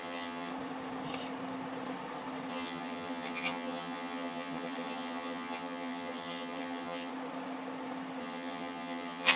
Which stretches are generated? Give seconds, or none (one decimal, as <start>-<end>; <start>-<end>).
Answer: 0.0-0.5; 2.5-7.1; 8.2-9.4